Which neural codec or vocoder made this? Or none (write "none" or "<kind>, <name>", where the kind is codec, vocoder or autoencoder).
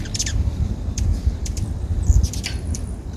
vocoder, BigVGAN v2